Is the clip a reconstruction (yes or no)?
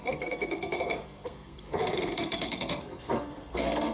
yes